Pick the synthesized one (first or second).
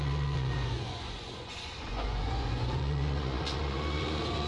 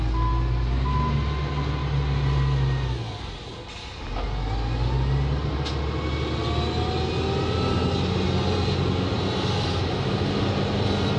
first